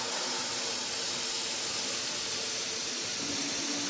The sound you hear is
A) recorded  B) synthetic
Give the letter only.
A